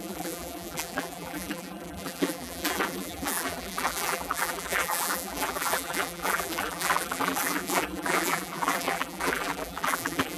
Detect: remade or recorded remade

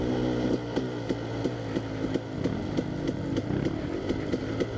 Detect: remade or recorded recorded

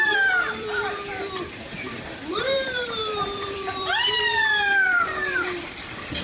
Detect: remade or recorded remade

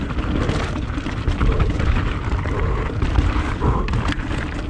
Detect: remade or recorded remade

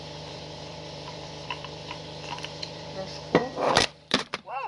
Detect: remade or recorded remade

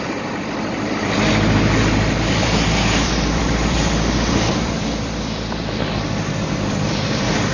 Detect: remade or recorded remade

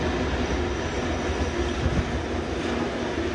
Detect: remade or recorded recorded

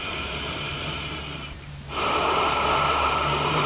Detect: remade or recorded remade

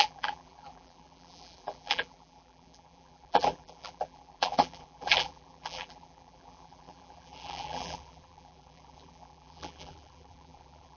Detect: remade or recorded remade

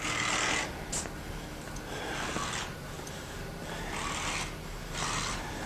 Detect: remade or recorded recorded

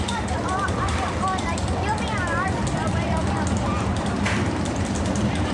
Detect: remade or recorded remade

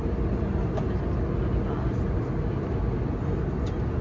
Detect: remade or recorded recorded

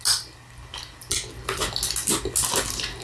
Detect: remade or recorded recorded